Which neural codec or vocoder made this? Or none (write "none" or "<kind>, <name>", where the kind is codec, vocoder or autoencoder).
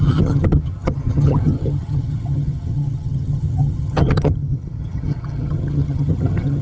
vocoder, HiFi-GAN